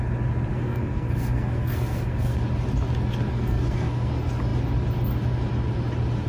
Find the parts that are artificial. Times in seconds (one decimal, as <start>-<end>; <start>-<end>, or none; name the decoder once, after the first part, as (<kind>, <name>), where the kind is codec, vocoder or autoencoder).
0.5-2.4 (codec, SNAC); 3.3-4.1

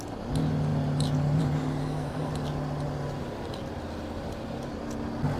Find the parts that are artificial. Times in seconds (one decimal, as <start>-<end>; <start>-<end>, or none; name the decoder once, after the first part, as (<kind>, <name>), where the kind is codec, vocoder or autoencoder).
1.8-2.3 (codec, SNAC)

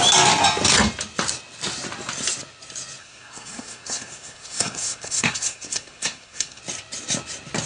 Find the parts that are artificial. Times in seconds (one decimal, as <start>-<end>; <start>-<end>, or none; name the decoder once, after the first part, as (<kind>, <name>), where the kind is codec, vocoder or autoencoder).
3.0-6.6 (codec, SNAC)